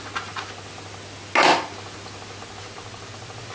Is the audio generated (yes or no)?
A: no